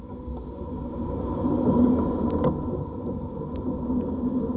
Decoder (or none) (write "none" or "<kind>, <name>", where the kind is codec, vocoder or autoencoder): none